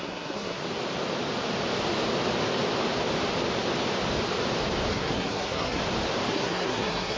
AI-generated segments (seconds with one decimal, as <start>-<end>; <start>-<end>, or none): 0.0-0.6; 4.9-5.8; 6.3-7.2